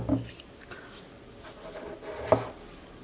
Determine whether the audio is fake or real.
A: real